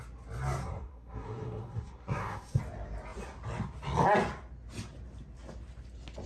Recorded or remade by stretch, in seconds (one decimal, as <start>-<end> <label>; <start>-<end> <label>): 0.0-0.6 recorded; 0.6-2.6 remade; 2.6-6.3 recorded